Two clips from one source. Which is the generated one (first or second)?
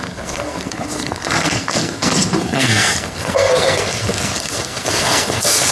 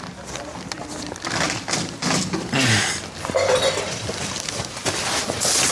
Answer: first